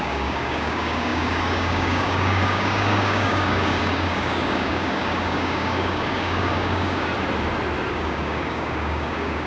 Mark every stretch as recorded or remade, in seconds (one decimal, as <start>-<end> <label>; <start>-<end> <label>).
0.0-7.1 remade; 7.1-7.9 recorded; 7.9-9.5 remade